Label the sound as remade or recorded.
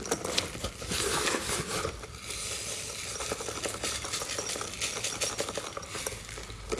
recorded